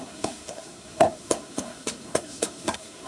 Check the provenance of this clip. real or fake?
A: fake